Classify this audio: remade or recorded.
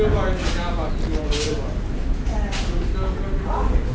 recorded